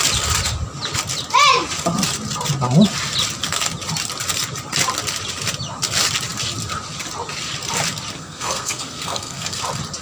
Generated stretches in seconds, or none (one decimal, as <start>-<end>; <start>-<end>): 8.1-9.6